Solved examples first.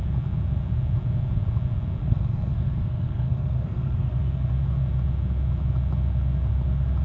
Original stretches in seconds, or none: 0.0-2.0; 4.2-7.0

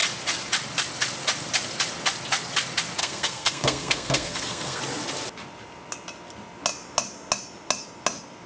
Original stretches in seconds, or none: 0.0-3.0; 4.8-8.5

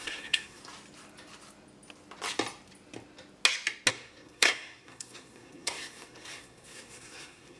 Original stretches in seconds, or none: 0.6-3.9

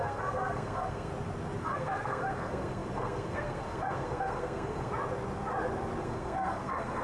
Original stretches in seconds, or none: 1.1-1.6; 4.9-6.0

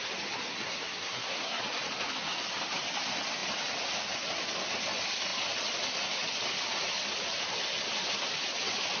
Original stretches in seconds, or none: 0.0-0.5; 1.6-9.0